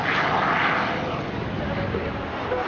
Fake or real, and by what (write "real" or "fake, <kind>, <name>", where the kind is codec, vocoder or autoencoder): real